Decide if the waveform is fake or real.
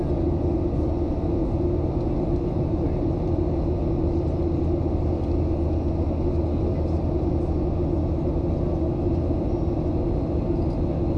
real